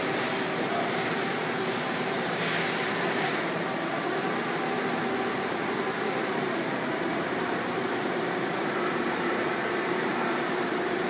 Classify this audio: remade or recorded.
remade